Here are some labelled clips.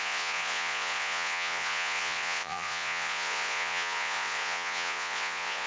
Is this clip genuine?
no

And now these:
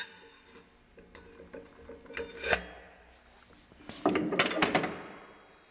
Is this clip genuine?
yes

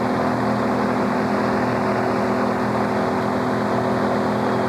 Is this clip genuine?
yes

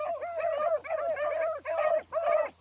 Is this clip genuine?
yes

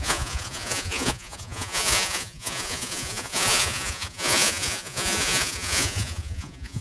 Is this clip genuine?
no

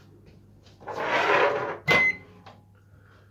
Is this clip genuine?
yes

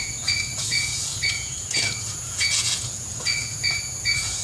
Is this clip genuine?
no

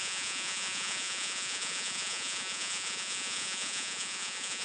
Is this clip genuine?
no